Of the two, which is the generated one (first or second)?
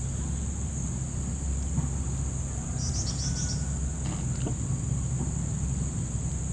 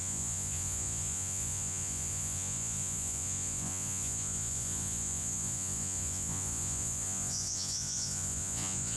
second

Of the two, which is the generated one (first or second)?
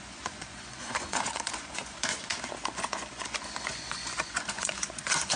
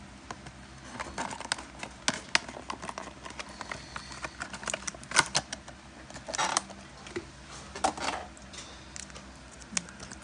first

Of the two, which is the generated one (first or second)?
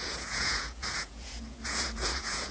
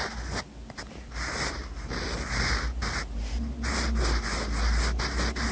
first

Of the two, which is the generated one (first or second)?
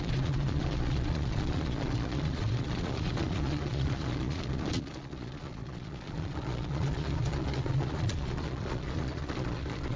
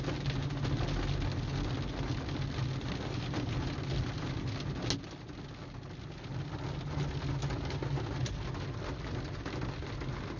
first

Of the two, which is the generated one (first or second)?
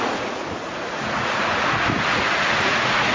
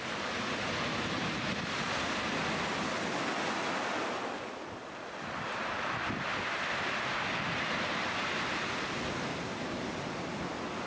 first